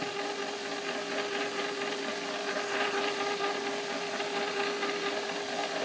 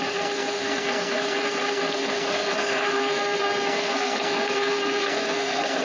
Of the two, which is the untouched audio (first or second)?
first